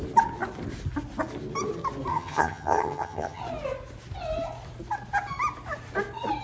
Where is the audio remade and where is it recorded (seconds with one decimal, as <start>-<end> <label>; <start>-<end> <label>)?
0.0-2.1 recorded; 2.1-3.4 remade; 3.4-6.4 recorded